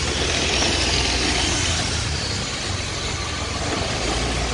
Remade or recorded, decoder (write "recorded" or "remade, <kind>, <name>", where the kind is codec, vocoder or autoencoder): recorded